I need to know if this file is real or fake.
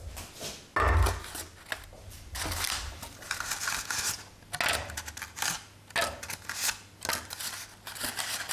real